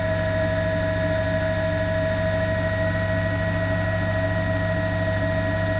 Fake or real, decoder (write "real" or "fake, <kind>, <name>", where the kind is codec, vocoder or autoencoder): real